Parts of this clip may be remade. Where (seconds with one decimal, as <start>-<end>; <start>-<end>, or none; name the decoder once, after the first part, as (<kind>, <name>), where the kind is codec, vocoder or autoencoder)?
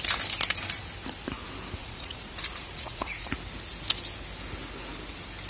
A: 1.8-3.3 (vocoder, Vocos)